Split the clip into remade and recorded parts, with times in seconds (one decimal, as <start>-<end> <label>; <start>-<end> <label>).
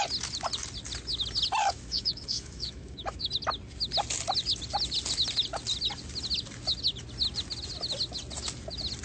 0.0-1.6 recorded; 1.6-3.3 remade; 3.3-9.0 recorded